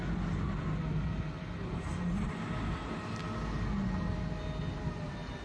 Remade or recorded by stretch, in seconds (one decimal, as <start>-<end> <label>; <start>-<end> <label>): 0.0-5.4 recorded